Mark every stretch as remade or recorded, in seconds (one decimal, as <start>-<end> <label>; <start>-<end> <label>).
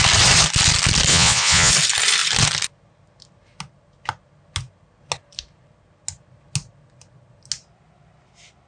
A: 0.0-1.1 recorded; 1.1-1.7 remade; 1.7-8.7 recorded